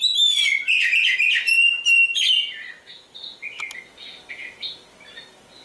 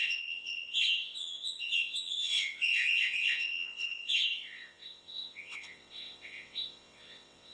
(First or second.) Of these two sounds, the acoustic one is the first